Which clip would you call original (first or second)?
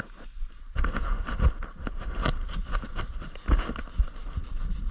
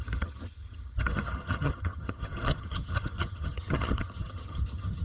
first